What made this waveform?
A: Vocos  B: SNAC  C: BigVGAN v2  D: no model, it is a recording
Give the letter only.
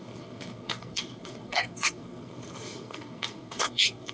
B